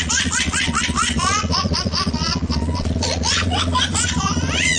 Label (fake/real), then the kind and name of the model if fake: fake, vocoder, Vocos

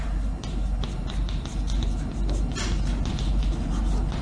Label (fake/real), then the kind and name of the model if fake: real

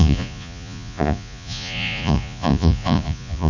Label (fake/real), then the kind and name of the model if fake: fake, vocoder, Vocos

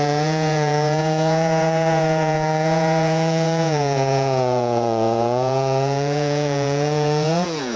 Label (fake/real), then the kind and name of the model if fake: fake, vocoder, Vocos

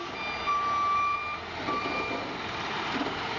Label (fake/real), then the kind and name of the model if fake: real